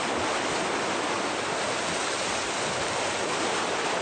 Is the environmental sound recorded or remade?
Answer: recorded